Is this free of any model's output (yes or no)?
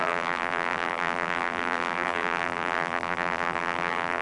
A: no